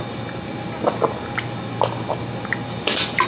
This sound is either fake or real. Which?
real